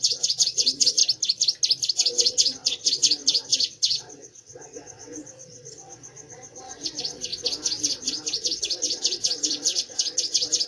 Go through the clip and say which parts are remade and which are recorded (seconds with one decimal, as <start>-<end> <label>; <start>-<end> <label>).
0.0-1.0 remade; 1.0-1.9 recorded; 1.9-10.7 remade